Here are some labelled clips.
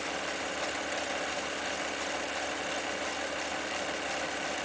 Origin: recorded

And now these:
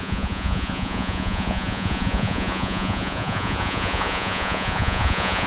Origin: remade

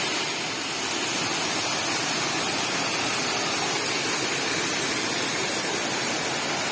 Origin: recorded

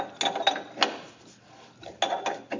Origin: recorded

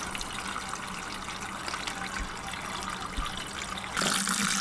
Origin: recorded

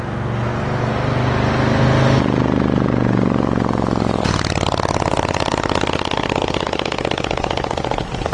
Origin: recorded